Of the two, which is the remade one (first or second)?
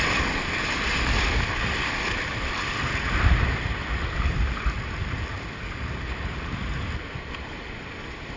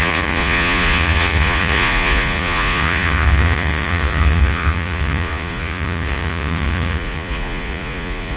second